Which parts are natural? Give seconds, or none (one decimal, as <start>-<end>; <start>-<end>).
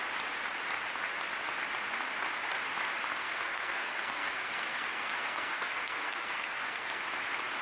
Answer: 0.0-3.1; 7.0-7.6